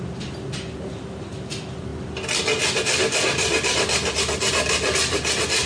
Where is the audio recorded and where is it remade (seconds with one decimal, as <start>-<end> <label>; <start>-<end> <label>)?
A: 0.0-5.7 recorded